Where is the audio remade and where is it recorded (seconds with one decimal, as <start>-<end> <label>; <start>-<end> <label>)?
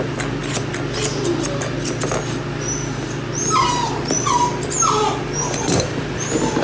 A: 0.0-6.6 recorded